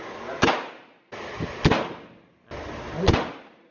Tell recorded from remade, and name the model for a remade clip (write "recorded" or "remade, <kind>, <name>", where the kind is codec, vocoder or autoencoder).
recorded